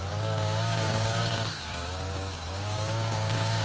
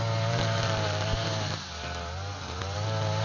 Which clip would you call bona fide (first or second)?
second